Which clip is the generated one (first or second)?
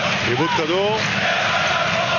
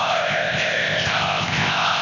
second